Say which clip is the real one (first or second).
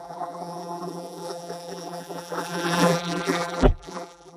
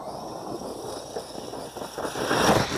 second